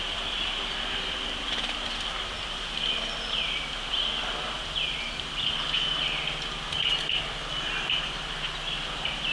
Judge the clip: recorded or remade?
recorded